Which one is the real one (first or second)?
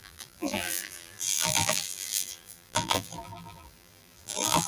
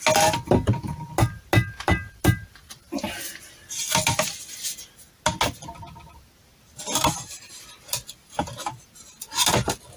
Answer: second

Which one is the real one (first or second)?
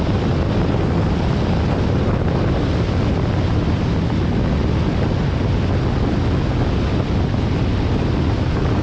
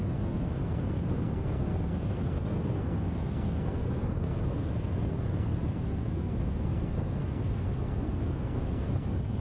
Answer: first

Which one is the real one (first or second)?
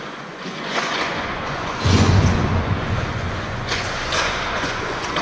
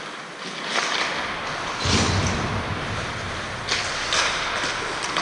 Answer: second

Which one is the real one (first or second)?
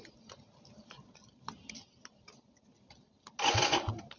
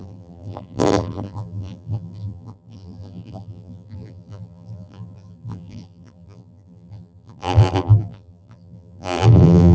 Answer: first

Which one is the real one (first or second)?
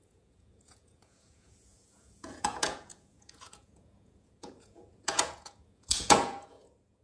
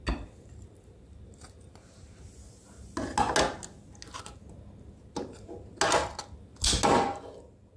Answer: second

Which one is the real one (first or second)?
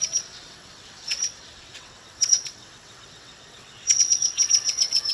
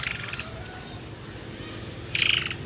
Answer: second